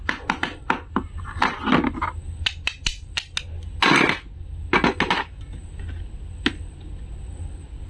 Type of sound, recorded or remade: recorded